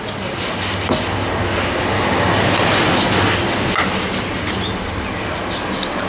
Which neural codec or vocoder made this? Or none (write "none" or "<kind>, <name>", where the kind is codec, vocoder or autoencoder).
none